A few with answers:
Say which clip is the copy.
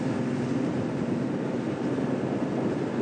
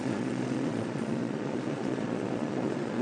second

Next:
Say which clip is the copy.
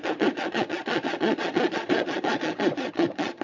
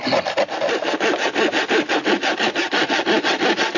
first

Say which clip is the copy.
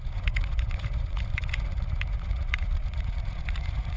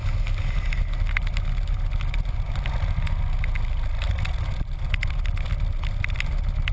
first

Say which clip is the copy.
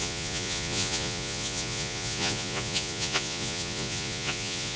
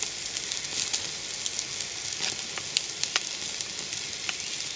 first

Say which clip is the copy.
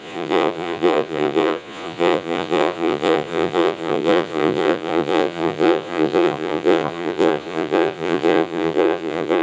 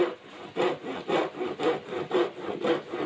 first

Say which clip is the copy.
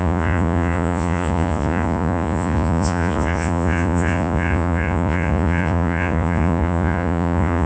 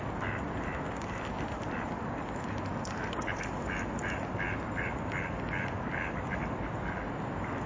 first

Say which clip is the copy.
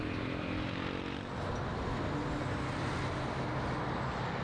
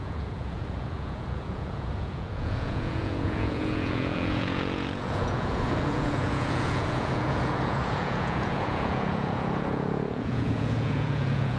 second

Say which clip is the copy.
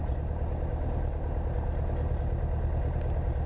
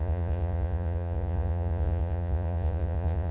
second